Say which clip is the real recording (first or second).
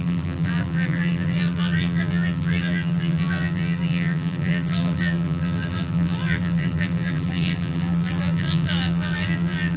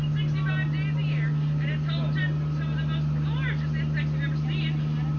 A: second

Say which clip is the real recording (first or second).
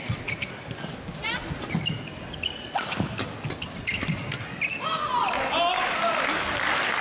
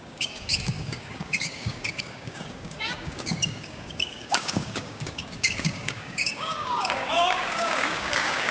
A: first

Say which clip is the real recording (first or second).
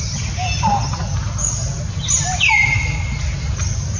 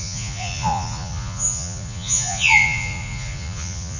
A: first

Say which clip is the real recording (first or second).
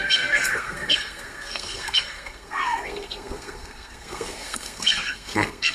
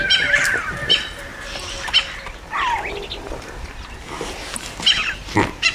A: second